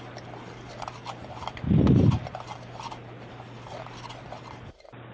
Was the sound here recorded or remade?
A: recorded